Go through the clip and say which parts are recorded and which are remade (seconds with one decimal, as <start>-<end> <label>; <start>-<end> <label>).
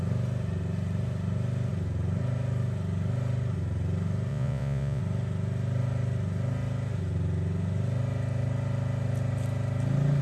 0.0-4.3 recorded; 4.3-5.0 remade; 5.0-10.2 recorded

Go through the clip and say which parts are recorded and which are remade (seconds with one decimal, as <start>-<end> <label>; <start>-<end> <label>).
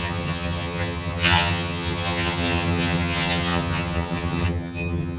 0.0-5.2 remade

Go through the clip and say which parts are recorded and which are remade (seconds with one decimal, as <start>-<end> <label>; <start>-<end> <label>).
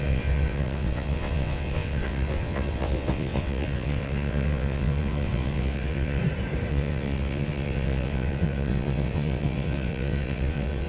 0.0-6.2 remade; 6.2-6.7 recorded; 6.7-10.9 remade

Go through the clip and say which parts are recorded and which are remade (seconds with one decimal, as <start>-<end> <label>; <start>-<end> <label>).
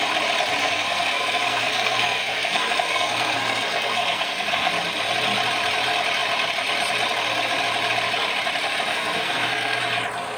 0.0-0.6 recorded; 0.6-4.7 remade; 4.7-8.9 recorded; 8.9-9.8 remade; 9.8-10.4 recorded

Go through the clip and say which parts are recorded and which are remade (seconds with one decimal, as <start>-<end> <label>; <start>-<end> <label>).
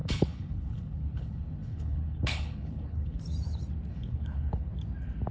0.0-3.2 remade; 3.2-3.9 recorded; 3.9-4.7 remade; 4.7-5.3 recorded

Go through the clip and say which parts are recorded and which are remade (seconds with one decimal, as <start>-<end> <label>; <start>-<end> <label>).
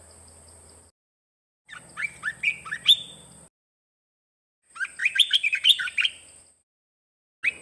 0.0-5.0 recorded; 5.0-6.1 remade; 6.1-7.6 recorded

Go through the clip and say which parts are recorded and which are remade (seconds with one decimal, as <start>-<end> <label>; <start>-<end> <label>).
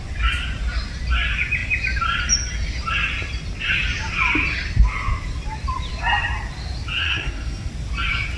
0.0-7.0 recorded; 7.0-7.7 remade; 7.7-8.4 recorded